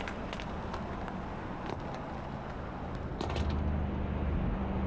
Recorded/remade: recorded